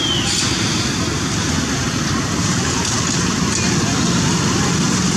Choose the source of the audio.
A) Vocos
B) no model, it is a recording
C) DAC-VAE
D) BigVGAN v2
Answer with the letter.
B